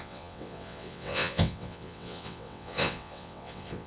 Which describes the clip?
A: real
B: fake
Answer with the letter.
B